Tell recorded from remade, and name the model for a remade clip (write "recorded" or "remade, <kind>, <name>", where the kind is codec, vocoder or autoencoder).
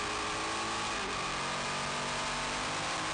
recorded